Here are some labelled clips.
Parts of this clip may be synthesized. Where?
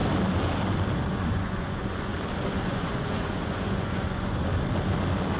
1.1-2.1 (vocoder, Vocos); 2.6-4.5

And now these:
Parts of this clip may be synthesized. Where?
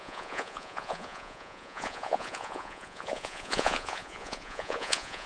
0.0-5.3 (vocoder, Vocos)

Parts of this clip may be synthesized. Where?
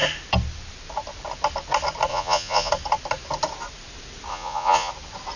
2.1-2.7 (vocoder, Vocos); 4.3-4.9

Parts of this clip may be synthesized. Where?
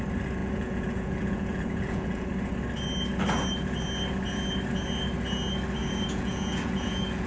0.4-2.3 (vocoder, Vocos); 5.8-7.3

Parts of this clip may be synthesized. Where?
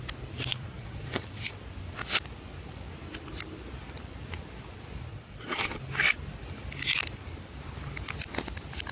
0.5-1.5 (vocoder, Vocos); 5.1-5.8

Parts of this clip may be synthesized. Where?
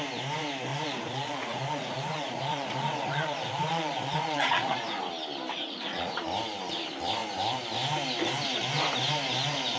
0.7-5.0 (vocoder, Vocos); 5.5-6.2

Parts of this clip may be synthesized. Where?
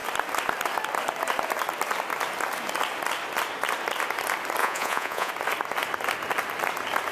4.6-5.3 (vocoder, Vocos)